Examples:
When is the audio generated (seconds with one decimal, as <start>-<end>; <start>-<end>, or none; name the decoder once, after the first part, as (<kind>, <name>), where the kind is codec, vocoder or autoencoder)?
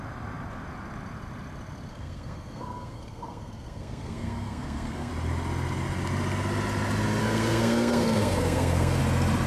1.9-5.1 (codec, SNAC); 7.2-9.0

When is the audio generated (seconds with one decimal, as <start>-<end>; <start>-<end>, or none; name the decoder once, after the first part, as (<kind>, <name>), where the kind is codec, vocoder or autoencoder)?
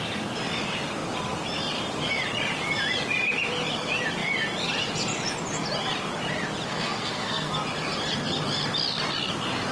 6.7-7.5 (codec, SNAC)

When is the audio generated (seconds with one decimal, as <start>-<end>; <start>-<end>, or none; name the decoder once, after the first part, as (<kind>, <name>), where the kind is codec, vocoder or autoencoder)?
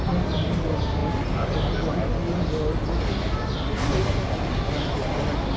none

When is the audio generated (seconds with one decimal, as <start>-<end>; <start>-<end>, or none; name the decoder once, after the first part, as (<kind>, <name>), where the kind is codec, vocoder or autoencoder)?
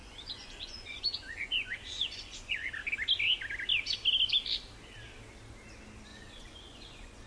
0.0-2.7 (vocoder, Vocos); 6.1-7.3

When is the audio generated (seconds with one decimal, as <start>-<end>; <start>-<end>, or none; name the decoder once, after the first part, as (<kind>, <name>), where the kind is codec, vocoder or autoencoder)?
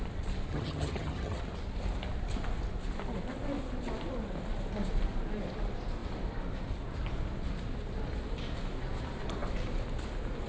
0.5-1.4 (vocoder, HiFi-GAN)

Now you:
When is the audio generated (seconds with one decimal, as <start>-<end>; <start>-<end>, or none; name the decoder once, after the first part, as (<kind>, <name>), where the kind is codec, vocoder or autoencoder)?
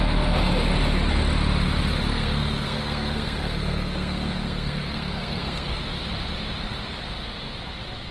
2.1-5.8 (codec, SNAC)